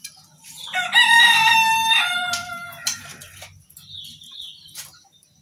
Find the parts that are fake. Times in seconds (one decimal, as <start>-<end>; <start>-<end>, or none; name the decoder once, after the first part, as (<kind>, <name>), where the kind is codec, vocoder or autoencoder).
2.4-4.8 (vocoder, BigVGAN v2)